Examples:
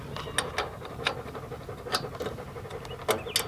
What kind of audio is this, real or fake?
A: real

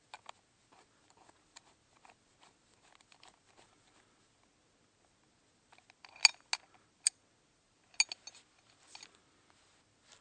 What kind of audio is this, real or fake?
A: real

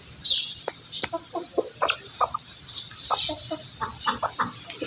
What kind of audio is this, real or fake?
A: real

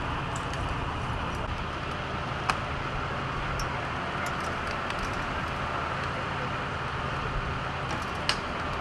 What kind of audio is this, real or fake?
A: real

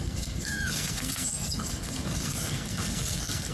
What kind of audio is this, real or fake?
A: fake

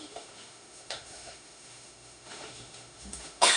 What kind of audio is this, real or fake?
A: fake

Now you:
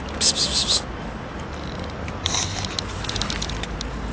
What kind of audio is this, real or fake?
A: real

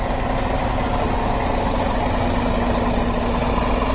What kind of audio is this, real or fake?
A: real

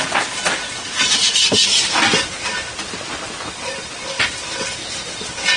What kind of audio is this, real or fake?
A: real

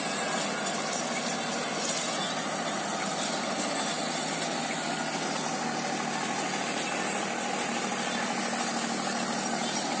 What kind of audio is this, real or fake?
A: real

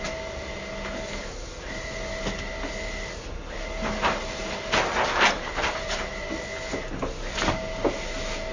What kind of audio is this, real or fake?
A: real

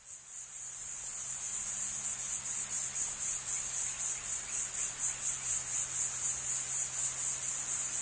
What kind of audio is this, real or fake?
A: real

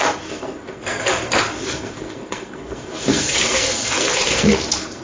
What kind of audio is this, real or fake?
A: fake